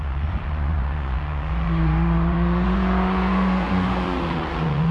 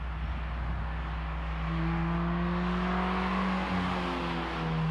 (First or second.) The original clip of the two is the second